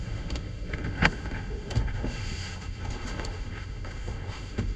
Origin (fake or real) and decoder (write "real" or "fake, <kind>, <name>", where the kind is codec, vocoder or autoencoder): fake, autoencoder, DAC-VAE